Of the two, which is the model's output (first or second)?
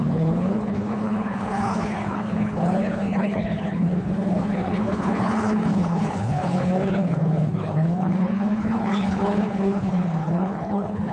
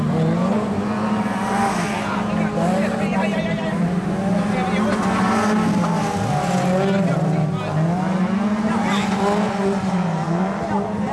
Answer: first